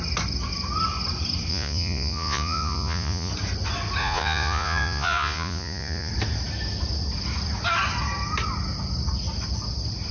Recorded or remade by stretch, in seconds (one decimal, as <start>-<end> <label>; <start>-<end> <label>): 0.0-1.5 recorded; 1.5-3.3 remade; 3.3-4.0 recorded; 4.0-6.1 remade; 6.1-10.1 recorded